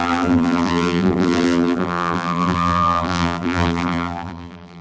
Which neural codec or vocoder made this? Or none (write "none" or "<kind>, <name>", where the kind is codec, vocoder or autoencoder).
vocoder, BigVGAN v2